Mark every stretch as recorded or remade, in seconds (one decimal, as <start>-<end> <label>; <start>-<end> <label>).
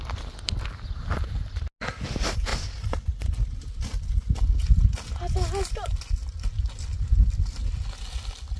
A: 0.0-8.6 recorded